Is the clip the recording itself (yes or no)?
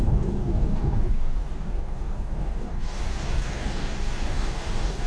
no